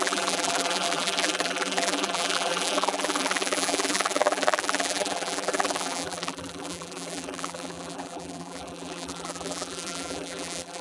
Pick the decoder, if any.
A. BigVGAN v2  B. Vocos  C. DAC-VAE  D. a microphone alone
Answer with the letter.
A